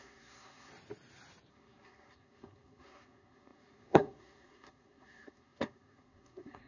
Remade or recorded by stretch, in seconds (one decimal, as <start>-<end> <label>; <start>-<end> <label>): 0.0-0.7 remade; 0.7-1.5 recorded; 1.5-6.7 remade